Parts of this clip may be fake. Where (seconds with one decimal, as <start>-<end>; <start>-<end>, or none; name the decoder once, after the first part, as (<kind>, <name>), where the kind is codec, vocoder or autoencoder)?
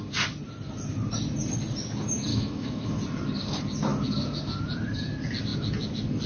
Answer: 2.3-3.0 (autoencoder, DAC-VAE)